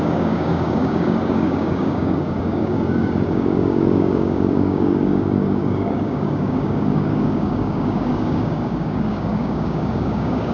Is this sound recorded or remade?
remade